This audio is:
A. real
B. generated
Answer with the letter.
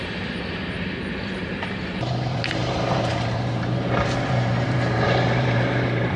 B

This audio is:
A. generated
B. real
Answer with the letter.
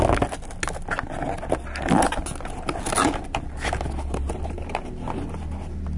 B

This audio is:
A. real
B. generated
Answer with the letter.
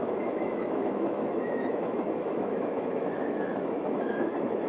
B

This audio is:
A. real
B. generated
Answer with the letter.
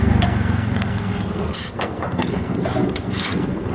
B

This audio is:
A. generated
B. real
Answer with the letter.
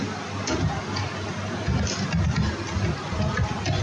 B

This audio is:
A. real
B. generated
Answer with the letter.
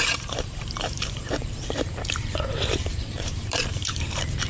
B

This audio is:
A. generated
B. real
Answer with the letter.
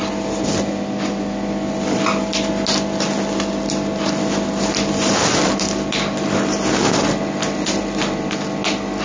B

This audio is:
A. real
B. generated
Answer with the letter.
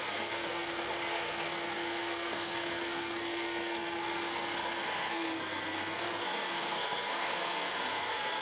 B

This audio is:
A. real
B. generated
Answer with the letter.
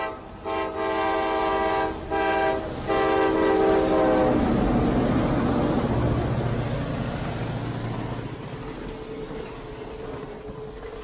A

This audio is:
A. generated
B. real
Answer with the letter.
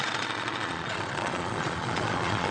A